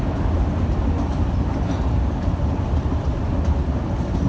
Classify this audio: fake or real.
real